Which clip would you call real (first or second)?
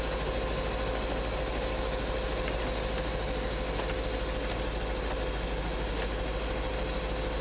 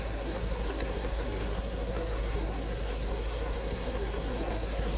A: first